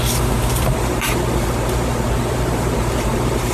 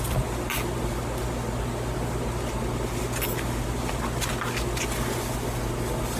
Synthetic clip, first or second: first